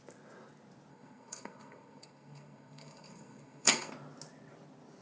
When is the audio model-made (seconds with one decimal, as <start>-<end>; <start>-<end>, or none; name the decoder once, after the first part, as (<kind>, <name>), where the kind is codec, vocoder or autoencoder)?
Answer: 0.9-3.9 (codec, SNAC)